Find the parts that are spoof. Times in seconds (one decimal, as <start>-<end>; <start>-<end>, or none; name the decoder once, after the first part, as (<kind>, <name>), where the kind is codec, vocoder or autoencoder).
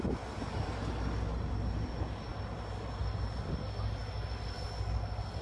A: none